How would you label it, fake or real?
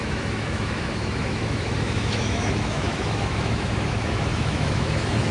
fake